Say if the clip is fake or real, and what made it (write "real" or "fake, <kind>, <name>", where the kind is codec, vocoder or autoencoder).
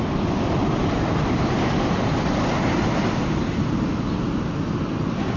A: real